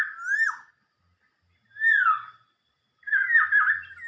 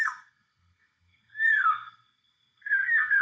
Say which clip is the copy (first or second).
second